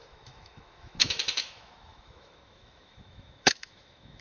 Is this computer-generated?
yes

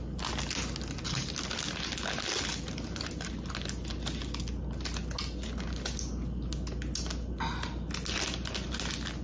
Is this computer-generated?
no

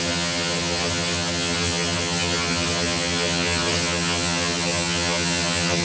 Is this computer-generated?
yes